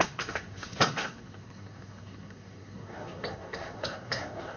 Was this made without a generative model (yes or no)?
no